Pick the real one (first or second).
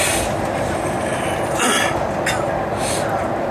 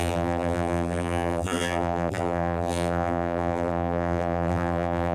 first